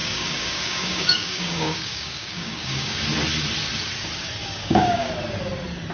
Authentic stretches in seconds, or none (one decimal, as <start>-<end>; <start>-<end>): 3.0-4.4; 5.1-5.9